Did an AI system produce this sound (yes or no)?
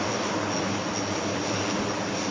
no